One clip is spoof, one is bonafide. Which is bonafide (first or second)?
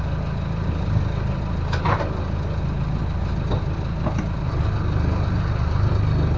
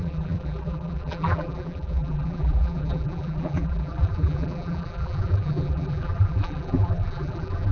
first